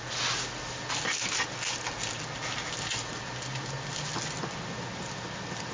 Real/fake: real